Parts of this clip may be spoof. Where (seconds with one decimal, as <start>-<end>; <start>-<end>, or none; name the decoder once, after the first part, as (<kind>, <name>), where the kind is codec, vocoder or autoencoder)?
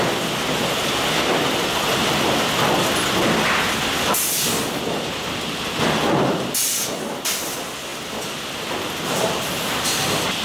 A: none